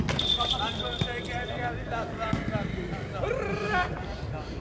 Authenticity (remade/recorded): recorded